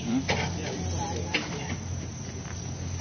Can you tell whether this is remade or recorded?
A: recorded